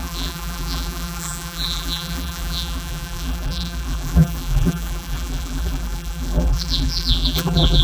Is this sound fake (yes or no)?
yes